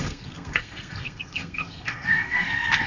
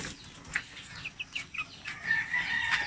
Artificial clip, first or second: first